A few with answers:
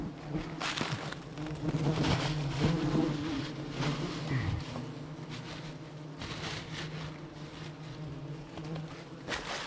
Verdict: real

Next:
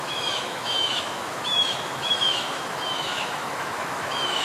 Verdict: fake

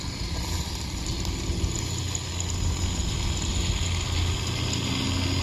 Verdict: real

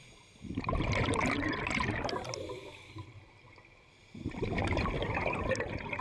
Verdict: real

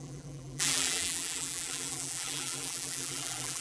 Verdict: fake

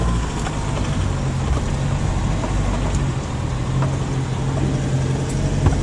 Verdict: real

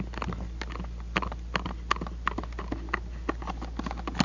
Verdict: real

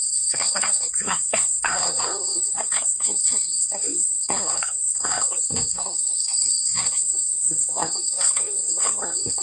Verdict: fake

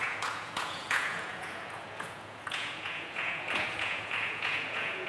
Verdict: fake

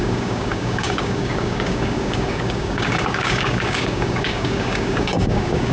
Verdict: fake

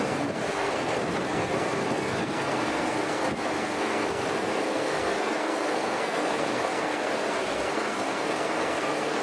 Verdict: fake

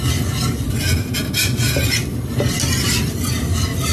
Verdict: real